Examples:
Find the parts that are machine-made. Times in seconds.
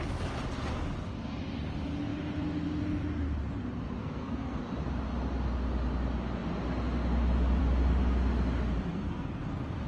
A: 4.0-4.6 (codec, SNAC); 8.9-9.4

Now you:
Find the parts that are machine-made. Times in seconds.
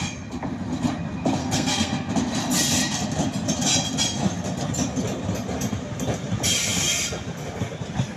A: 1.4-2.1 (codec, SNAC)